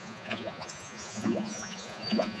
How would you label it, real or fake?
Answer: fake